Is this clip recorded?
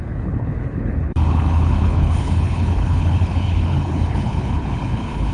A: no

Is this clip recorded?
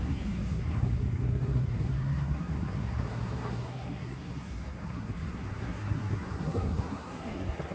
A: no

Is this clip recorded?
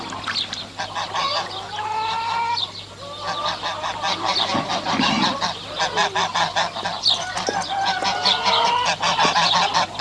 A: yes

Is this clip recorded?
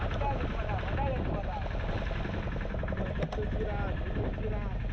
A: yes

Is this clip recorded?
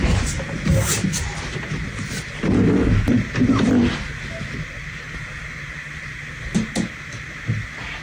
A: yes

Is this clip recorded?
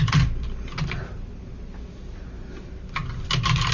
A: yes